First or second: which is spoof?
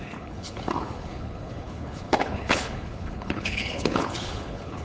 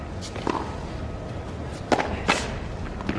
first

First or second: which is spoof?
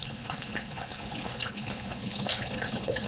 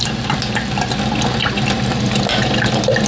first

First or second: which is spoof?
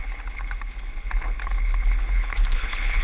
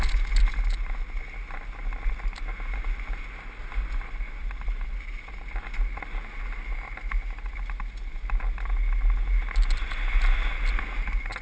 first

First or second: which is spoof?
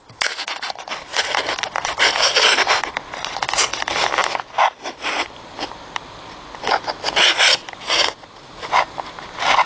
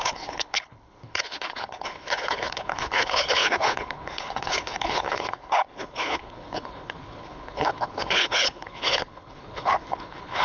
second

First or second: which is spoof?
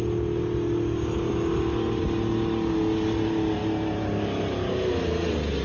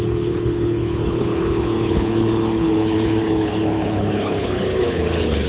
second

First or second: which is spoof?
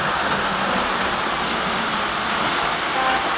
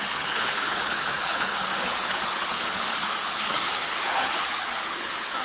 second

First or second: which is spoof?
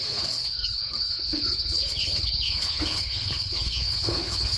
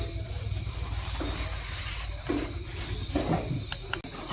first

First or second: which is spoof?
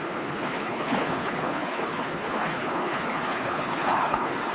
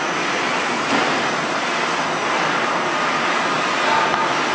first